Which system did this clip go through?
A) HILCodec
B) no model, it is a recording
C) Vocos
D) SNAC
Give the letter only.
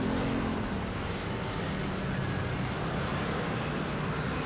B